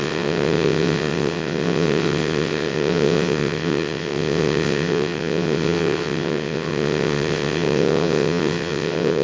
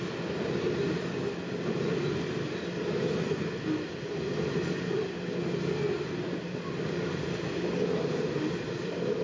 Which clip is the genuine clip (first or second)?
second